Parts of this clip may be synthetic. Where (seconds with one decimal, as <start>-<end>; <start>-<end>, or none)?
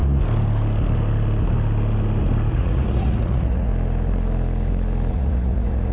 2.5-3.7; 5.1-5.9